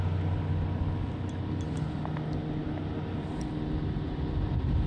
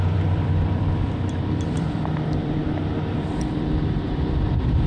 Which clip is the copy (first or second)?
second